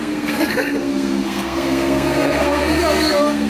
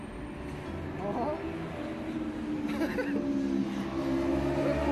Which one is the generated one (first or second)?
first